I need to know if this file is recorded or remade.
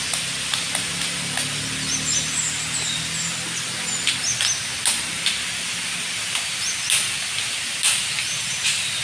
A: recorded